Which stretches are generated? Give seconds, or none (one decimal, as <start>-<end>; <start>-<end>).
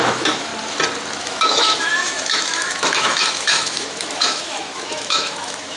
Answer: 0.0-0.5; 1.2-5.8